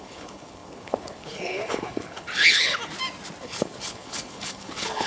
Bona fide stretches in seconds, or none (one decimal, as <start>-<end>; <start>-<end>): 2.8-3.4